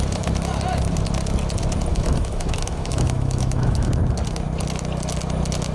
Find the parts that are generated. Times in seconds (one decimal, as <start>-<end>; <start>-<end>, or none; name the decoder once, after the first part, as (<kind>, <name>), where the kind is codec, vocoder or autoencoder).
1.9-3.9 (autoencoder, DAC-VAE)